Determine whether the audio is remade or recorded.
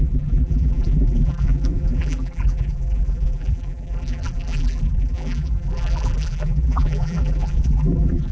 remade